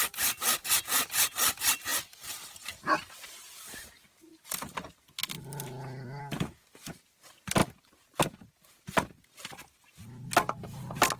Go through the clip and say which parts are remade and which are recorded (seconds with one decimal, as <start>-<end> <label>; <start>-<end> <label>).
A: 0.0-11.2 recorded